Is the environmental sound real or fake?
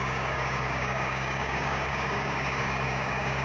fake